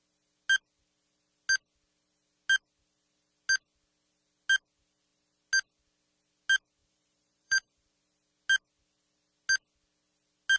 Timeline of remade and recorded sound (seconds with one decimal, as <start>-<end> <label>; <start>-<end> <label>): 0.0-6.8 recorded; 6.8-8.0 remade; 8.0-10.6 recorded

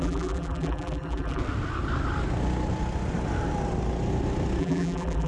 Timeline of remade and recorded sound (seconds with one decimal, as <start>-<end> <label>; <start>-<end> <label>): 0.0-1.4 remade; 1.4-4.6 recorded; 4.6-5.3 remade